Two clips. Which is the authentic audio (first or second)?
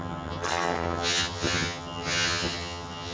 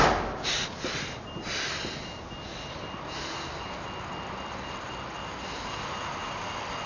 second